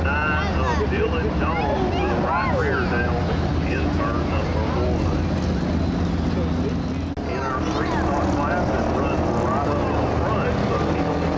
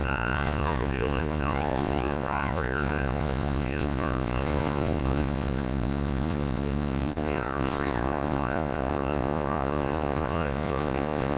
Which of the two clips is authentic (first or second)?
first